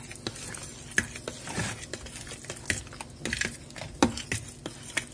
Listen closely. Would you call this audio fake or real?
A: real